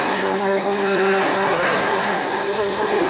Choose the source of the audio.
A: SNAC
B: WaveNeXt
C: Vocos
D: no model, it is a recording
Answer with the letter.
A